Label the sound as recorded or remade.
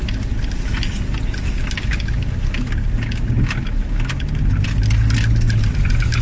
recorded